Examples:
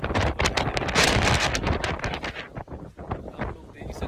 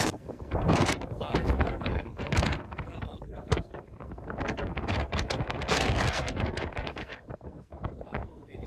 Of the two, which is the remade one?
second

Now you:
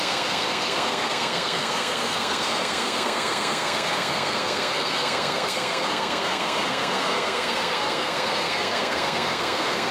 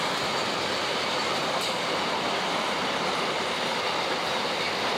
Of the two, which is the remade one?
first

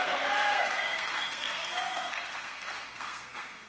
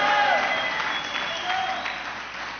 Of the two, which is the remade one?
first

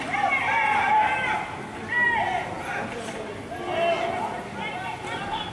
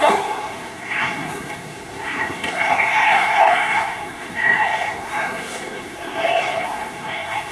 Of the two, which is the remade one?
second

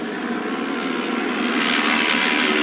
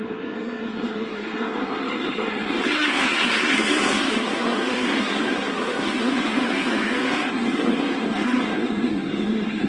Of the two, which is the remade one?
second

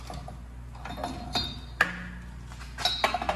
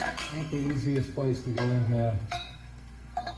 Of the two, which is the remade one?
second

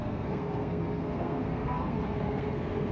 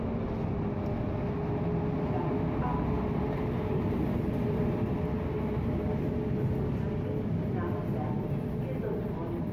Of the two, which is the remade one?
first